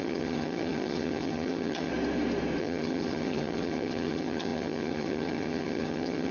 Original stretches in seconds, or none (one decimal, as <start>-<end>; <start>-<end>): 1.9-2.6